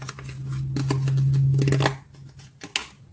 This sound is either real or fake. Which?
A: real